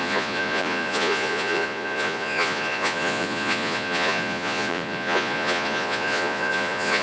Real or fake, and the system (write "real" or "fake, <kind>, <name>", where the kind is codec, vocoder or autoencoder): fake, vocoder, Vocos